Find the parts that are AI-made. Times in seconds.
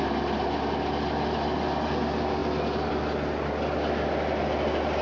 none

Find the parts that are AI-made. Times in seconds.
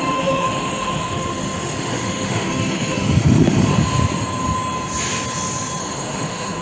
0.0-3.7; 5.8-6.6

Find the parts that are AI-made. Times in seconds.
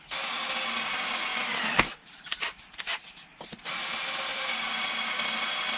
1.3-3.7; 4.3-4.9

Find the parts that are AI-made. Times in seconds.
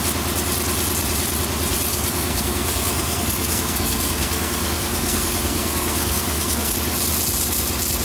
1.9-6.7